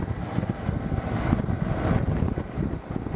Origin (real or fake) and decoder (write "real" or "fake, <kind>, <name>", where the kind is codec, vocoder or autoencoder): real